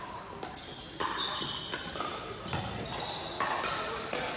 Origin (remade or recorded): recorded